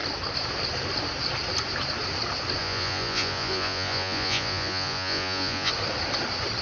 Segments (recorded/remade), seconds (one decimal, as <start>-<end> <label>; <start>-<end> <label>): 0.0-2.6 recorded; 2.6-5.7 remade; 5.7-6.6 recorded